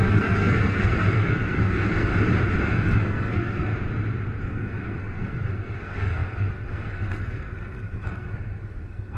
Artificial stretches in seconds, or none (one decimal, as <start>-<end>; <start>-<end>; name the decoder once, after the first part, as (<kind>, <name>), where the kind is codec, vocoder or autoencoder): 0.0-2.1 (codec, SNAC); 2.6-3.7; 4.4-9.2